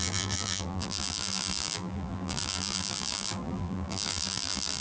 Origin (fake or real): fake